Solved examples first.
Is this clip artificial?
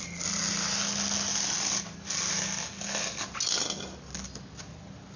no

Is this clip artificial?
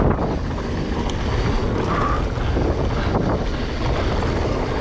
no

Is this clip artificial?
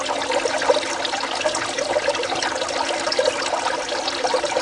no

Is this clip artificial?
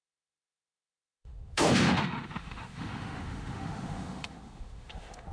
yes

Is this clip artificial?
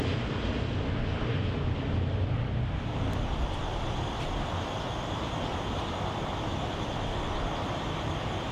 no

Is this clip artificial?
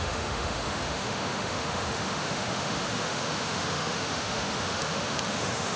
yes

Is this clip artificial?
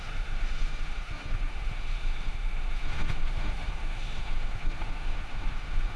yes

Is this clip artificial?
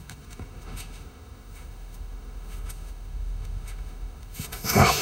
yes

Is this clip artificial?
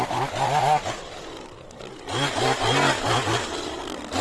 no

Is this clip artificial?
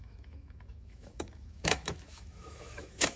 yes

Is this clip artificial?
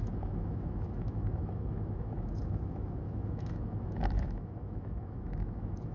yes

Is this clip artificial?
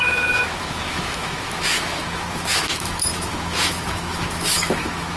yes